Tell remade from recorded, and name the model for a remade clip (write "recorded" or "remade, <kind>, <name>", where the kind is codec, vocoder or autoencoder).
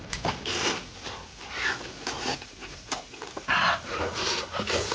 recorded